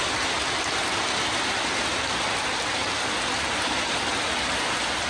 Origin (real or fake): real